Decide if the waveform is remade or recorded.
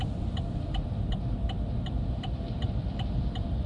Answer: recorded